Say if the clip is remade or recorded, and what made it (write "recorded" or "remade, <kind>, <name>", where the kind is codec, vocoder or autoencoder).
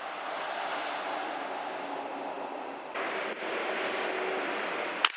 recorded